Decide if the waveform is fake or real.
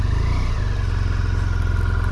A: real